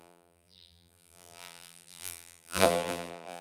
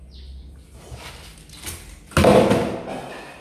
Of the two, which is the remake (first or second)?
first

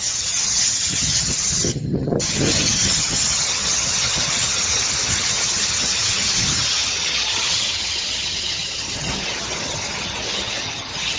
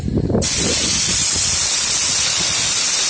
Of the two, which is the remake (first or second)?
first